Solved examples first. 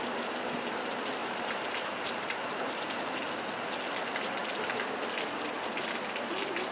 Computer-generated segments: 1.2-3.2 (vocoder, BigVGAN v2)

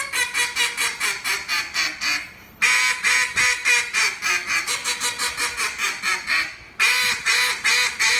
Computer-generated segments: none

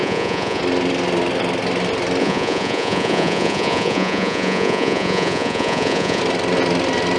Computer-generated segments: 0.0-0.6 (vocoder, Vocos); 2.2-6.2

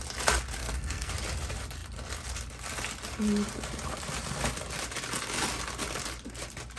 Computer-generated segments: 0.6-1.1 (codec, SNAC)